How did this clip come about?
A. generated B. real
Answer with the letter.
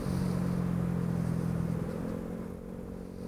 B